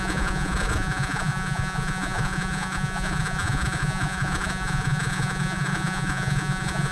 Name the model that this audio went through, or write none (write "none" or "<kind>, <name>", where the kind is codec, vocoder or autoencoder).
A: vocoder, Vocos